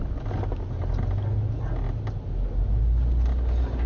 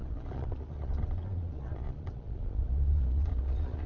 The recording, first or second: first